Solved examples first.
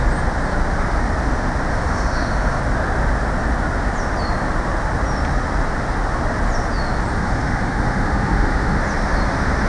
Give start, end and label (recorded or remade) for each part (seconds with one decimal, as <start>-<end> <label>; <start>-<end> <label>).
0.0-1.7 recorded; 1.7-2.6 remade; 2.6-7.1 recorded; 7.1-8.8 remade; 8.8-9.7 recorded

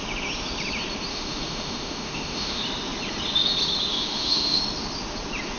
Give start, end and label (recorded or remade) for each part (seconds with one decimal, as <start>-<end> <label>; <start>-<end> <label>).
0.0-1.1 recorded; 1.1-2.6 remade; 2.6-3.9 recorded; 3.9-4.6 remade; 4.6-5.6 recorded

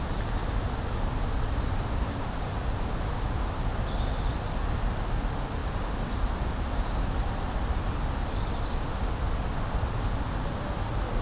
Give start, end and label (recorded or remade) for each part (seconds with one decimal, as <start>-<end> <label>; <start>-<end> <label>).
0.0-11.2 recorded